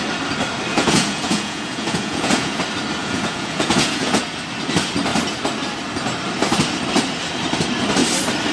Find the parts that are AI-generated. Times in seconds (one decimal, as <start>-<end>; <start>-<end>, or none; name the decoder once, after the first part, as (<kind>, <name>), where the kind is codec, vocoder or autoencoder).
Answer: 0.7-2.6 (vocoder, Vocos); 3.0-4.2